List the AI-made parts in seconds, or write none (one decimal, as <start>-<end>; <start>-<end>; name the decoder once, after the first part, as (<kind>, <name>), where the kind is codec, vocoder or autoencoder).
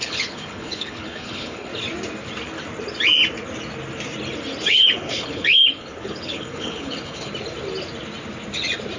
0.0-1.7 (codec, HILCodec); 4.7-7.3